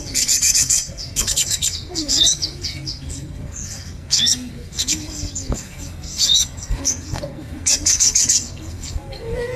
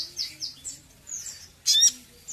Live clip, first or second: second